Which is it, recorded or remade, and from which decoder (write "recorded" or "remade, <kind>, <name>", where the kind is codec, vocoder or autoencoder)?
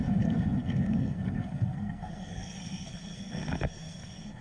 remade, codec, SNAC